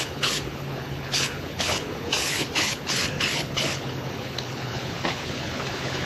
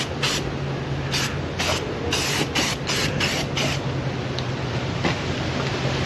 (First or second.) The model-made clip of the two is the first